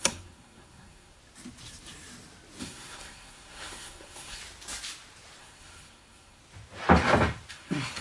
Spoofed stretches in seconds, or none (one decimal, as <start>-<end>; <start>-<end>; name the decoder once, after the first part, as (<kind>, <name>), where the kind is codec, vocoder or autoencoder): 0.0-1.2 (codec, SNAC); 2.6-4.4; 5.4-6.4; 7.5-8.0